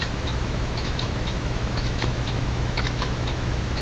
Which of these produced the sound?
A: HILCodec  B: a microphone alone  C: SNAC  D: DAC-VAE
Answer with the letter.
D